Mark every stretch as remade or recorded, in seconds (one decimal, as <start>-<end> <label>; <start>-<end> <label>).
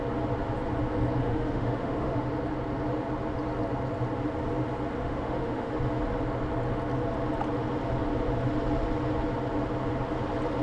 0.0-1.2 recorded; 1.2-2.3 remade; 2.3-5.0 recorded; 5.0-5.7 remade; 5.7-10.6 recorded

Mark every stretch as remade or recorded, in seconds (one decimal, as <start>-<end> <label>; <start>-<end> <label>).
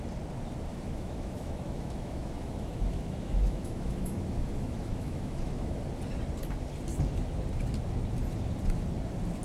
0.0-0.7 recorded; 0.7-5.8 remade; 5.8-9.4 recorded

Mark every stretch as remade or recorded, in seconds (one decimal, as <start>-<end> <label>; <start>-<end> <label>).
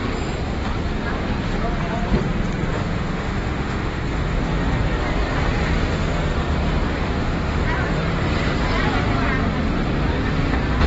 0.0-2.7 recorded; 2.7-4.0 remade; 4.0-7.0 recorded; 7.0-7.6 remade; 7.6-10.9 recorded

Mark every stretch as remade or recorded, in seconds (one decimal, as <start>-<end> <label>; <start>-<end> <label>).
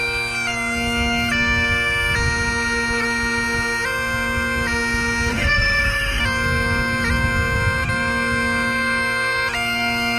0.0-5.3 recorded; 5.3-6.2 remade; 6.2-10.2 recorded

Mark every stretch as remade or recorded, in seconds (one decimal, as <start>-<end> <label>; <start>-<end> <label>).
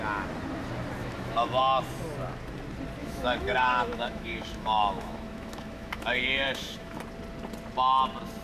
0.0-1.0 recorded; 1.0-1.6 remade; 1.6-3.0 recorded; 3.0-7.0 remade; 7.0-8.4 recorded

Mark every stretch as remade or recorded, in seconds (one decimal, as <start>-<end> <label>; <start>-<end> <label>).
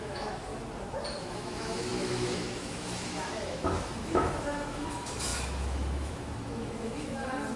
0.0-0.5 remade; 0.5-1.2 recorded; 1.2-7.6 remade